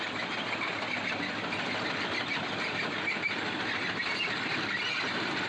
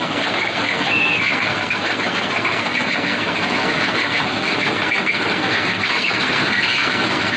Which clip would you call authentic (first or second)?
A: first